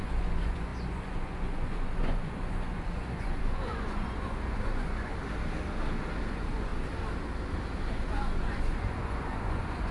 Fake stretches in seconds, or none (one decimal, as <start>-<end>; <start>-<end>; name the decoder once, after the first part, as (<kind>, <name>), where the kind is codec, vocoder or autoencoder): 0.0-5.1 (vocoder, Vocos); 6.3-6.7; 7.9-9.9